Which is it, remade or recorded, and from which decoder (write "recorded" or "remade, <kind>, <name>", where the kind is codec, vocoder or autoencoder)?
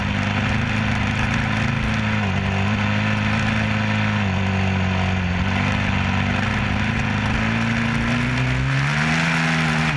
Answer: recorded